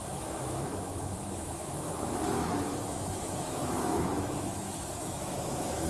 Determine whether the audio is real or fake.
fake